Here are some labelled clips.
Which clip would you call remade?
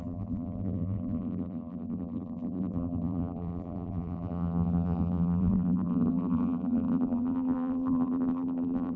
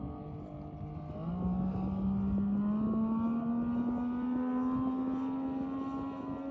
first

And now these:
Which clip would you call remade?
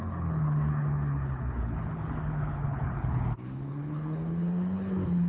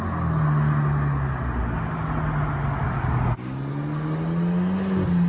first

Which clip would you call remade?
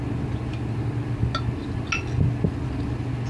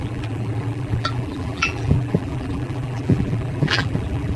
second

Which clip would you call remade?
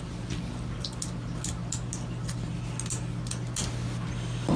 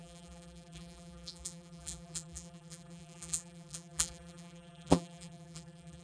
second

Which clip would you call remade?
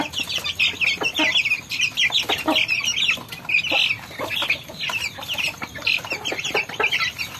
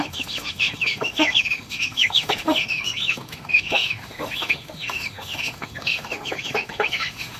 second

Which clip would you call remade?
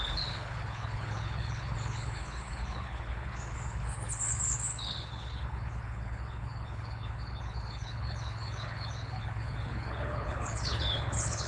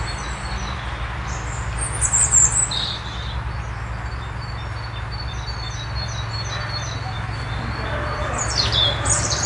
first